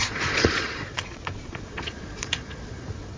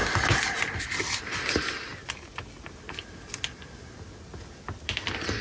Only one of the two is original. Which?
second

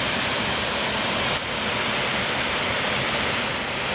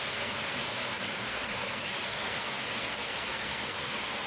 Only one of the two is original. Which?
first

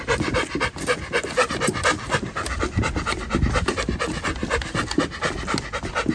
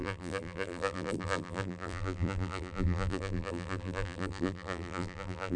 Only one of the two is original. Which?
first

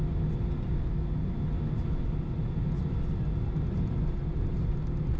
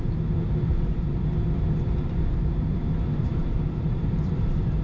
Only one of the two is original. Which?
first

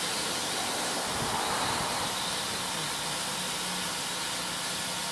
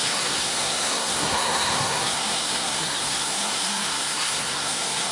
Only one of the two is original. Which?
first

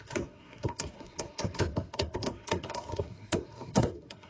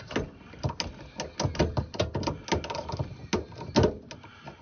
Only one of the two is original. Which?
second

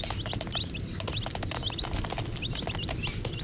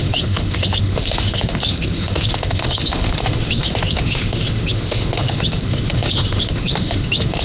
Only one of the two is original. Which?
first